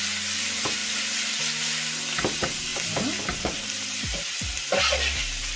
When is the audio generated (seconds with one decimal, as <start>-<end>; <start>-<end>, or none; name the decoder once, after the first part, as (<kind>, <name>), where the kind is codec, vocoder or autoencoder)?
none